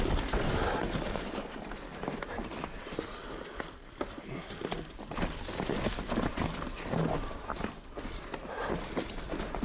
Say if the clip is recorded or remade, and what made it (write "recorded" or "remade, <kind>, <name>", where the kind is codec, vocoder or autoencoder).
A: remade, vocoder, BigVGAN v2